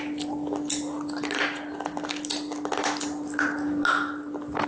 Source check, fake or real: real